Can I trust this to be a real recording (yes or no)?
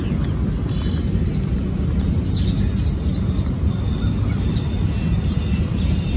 yes